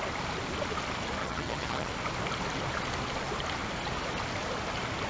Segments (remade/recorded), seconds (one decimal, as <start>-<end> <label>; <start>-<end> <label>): 0.0-1.2 recorded; 1.2-1.9 remade; 1.9-5.1 recorded